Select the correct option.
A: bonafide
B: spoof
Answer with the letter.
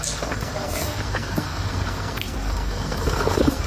B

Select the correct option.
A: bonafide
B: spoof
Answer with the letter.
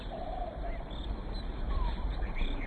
B